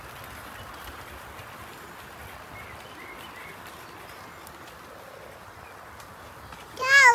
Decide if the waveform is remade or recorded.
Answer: recorded